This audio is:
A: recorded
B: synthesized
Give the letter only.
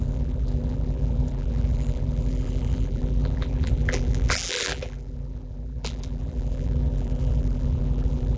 B